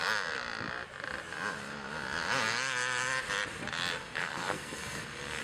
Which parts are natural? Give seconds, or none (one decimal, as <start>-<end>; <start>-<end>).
0.0-4.0